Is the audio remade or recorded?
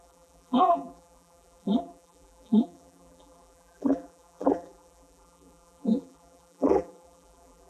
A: remade